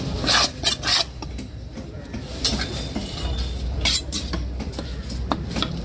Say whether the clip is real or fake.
fake